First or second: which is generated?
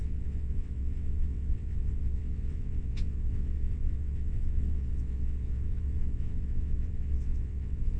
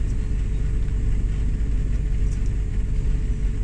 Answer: first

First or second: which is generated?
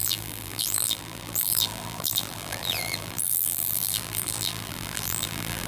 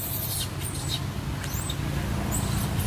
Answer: first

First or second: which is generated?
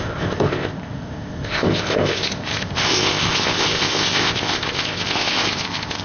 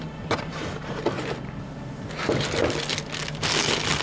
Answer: first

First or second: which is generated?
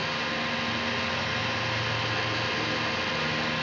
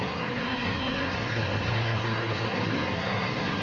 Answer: second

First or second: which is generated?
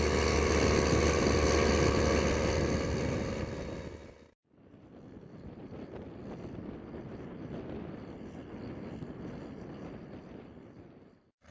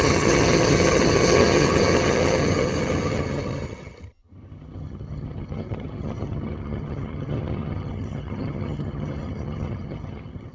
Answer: second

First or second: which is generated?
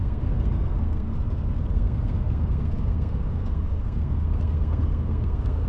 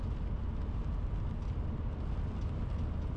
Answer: first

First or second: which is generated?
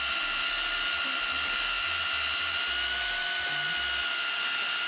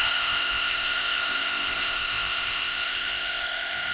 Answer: second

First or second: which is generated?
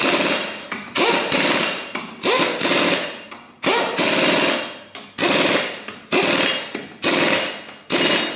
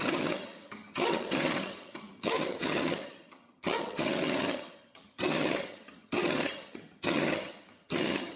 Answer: second